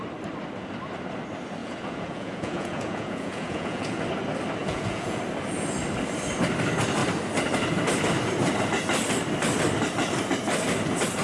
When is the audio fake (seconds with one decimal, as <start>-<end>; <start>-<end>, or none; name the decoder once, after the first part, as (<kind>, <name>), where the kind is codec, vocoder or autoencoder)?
1.6-4.0 (vocoder, Vocos); 4.6-5.2